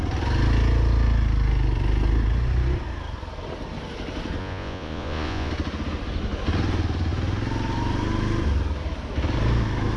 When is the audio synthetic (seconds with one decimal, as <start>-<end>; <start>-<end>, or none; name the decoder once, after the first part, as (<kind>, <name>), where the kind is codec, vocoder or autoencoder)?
4.4-5.5 (vocoder, Vocos)